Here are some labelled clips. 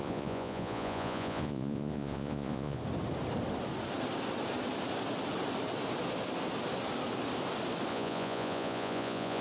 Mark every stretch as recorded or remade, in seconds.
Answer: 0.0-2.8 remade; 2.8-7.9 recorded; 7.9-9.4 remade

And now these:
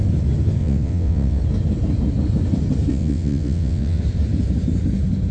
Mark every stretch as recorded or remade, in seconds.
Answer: 0.0-0.6 recorded; 0.6-1.4 remade; 1.4-2.9 recorded; 2.9-4.0 remade; 4.0-5.3 recorded

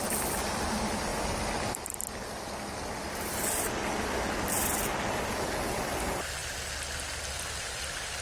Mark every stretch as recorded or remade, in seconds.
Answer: 0.0-8.2 recorded

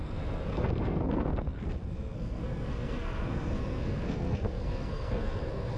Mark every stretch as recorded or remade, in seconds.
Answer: 0.0-5.8 remade

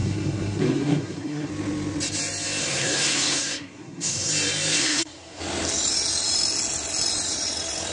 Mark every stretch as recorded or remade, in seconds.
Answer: 0.0-1.5 remade; 1.5-2.6 recorded; 2.6-4.3 remade; 4.3-4.8 recorded; 4.8-5.4 remade; 5.4-7.9 recorded

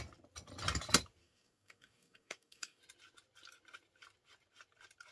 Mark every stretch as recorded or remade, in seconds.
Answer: 0.0-1.2 recorded; 1.2-2.8 remade; 2.8-5.1 recorded